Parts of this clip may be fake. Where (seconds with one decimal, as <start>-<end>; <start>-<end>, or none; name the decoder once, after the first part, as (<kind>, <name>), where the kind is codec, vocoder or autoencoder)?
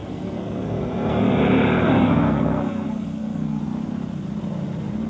0.0-1.4 (codec, SNAC); 1.9-3.6